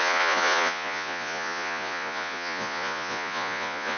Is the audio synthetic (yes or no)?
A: yes